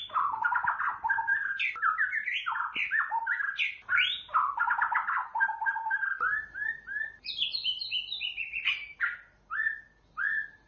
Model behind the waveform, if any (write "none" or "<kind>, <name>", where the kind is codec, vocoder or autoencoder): none